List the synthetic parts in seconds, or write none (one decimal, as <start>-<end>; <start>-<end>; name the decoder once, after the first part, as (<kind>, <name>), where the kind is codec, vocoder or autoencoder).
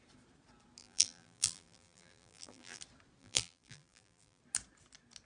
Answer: 0.8-2.8 (vocoder, BigVGAN v2); 3.2-4.4